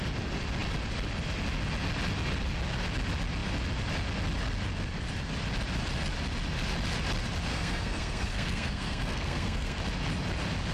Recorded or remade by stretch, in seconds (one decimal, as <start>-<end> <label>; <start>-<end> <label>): 0.0-7.5 recorded; 7.5-9.8 remade; 9.8-10.7 recorded